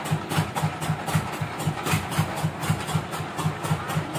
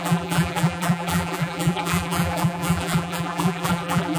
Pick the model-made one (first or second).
second